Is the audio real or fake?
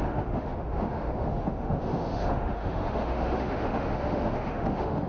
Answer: fake